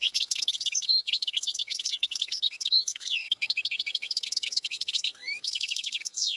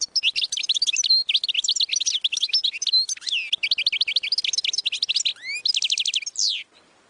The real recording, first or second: second